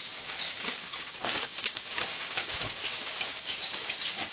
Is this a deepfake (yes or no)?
yes